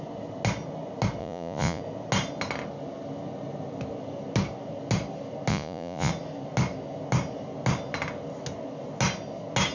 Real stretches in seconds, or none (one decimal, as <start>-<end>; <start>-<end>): 0.0-1.2; 1.8-5.5; 6.1-9.7